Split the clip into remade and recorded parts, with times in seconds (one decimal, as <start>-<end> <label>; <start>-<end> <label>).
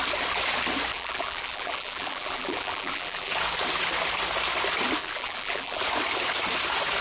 0.0-0.9 recorded; 0.9-3.3 remade; 3.3-5.0 recorded; 5.0-5.8 remade; 5.8-7.0 recorded